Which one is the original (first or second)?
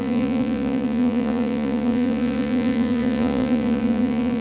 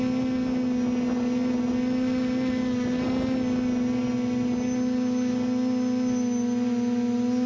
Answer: second